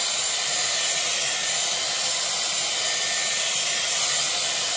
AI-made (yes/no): no